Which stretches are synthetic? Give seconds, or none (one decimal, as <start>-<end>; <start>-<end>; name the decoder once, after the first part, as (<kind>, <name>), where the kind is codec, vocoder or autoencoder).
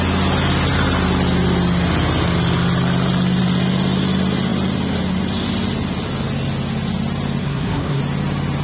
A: 7.4-8.0 (codec, SNAC)